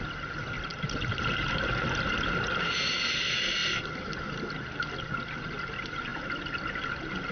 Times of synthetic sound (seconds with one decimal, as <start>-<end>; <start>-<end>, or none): none